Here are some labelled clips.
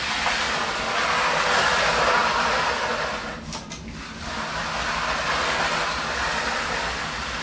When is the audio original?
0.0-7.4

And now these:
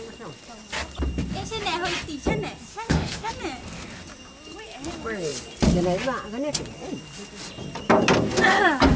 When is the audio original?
0.0-2.7; 3.3-9.0

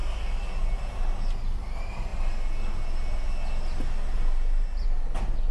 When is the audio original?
0.0-5.5

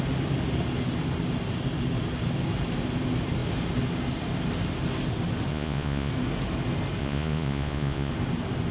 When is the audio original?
0.0-5.5; 6.1-7.0; 8.1-8.7

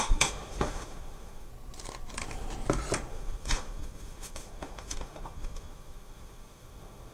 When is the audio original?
1.5-3.1

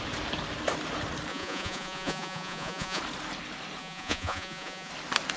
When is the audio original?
0.0-1.3; 3.0-3.8; 4.9-5.4